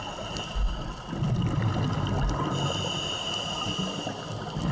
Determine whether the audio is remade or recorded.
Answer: recorded